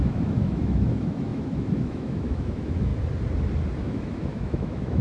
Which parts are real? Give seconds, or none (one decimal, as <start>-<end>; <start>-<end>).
2.9-3.8